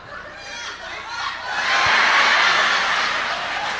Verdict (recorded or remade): recorded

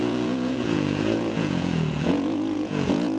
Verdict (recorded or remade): remade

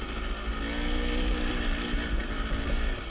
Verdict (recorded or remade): recorded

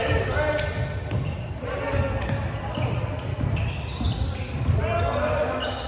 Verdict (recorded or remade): recorded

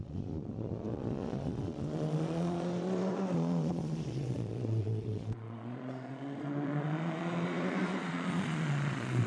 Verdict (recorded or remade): remade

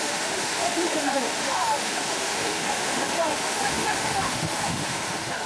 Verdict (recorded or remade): remade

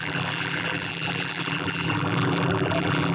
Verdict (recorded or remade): remade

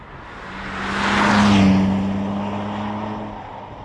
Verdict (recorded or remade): recorded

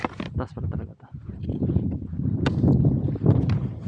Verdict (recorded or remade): remade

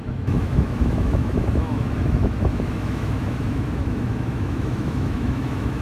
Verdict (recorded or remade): remade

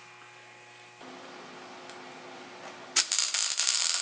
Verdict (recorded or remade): recorded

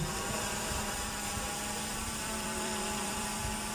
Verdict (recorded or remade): remade